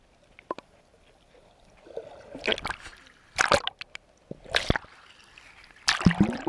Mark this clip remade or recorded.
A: recorded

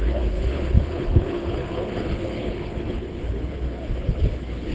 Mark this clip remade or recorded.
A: remade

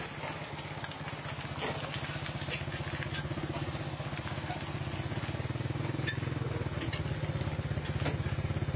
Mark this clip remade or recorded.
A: recorded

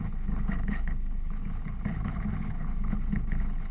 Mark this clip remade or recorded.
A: remade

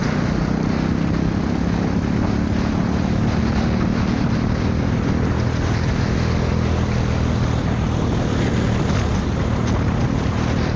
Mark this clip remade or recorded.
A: recorded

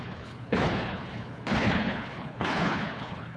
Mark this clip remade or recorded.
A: remade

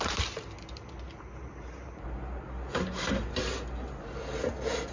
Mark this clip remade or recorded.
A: recorded